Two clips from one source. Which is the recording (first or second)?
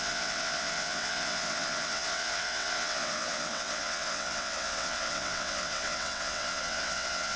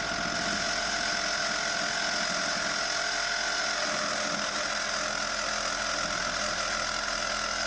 second